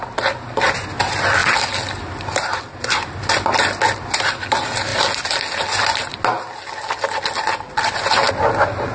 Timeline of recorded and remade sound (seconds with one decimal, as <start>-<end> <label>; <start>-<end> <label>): 0.0-8.9 recorded